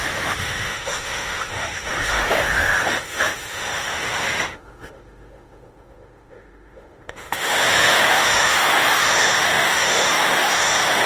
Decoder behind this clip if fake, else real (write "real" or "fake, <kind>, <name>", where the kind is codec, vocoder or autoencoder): fake, autoencoder, DAC-VAE